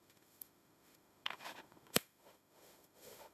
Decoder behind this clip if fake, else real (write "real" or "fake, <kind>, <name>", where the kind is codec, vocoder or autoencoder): fake, autoencoder, DAC-VAE